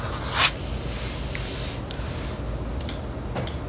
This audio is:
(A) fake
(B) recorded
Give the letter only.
B